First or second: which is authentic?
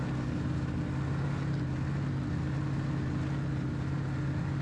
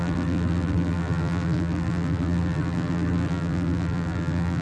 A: first